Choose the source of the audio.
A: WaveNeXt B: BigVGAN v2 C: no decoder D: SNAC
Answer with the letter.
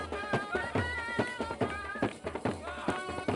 B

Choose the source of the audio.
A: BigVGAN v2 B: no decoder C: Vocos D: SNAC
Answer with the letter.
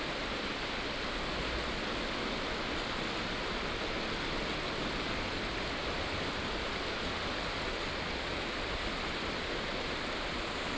B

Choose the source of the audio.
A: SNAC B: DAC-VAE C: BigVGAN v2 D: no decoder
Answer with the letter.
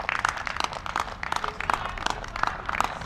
D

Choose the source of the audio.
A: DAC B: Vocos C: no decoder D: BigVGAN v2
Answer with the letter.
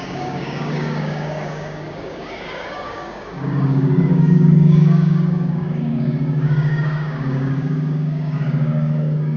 A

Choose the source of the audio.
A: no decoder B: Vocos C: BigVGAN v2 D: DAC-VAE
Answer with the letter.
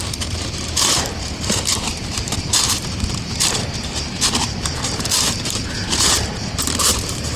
C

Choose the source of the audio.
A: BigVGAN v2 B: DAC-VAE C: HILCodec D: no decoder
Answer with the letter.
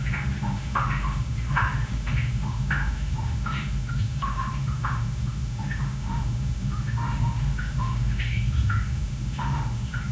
B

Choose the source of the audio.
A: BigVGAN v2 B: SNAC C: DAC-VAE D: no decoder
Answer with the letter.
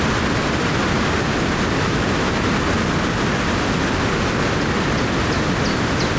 D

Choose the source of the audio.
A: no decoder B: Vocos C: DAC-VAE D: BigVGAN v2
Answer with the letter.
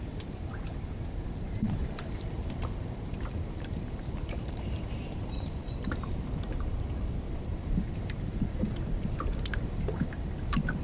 D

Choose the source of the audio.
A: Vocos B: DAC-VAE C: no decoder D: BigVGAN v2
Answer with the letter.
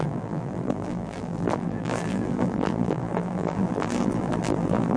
D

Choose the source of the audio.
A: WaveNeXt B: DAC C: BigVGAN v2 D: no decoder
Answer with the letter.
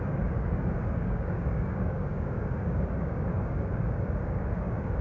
B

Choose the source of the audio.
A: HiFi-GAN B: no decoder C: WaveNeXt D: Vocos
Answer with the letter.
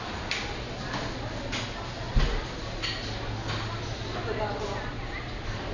B